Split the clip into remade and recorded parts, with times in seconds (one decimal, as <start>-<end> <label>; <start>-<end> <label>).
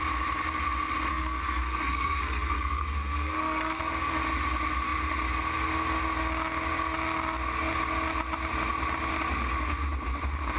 0.0-1.1 recorded; 1.1-3.8 remade; 3.8-10.6 recorded